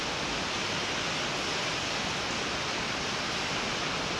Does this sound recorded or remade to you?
recorded